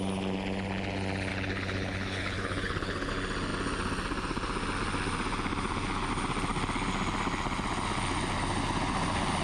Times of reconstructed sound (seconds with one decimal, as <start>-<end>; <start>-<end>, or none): 1.3-3.1